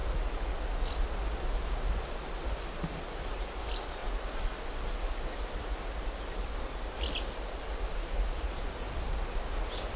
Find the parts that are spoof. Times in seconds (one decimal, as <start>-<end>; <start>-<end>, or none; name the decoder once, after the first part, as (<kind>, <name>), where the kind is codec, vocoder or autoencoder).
0.0-0.5 (vocoder, BigVGAN v2)